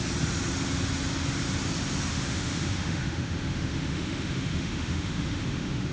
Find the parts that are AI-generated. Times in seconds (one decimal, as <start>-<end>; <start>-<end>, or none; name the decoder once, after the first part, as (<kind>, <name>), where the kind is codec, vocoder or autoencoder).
2.1-5.9 (autoencoder, DAC-VAE)